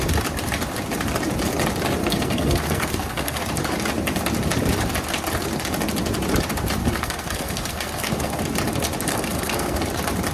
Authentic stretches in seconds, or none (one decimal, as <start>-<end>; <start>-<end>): 0.0-2.0; 3.4-6.8; 8.4-9.1; 9.8-10.3